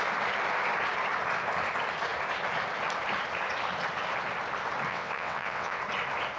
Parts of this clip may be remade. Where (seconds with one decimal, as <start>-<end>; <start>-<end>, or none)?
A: 4.9-5.8